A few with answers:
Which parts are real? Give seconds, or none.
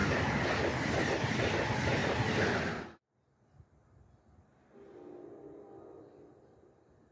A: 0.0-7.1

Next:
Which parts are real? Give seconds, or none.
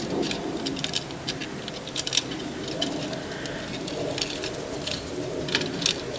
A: 0.0-6.2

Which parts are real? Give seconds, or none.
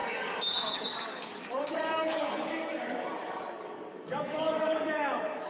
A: none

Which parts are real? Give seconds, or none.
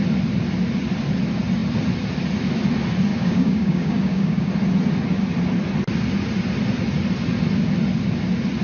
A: 0.0-3.1; 4.5-8.6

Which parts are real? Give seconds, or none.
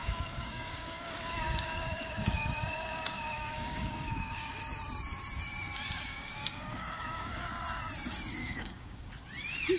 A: 4.6-6.1; 7.4-8.4; 9.1-9.8